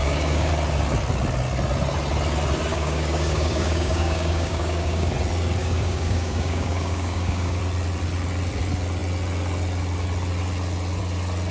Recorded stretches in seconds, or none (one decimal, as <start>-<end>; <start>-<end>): 0.5-2.7; 5.1-5.6; 7.6-11.5